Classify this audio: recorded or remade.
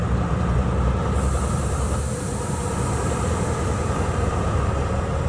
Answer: remade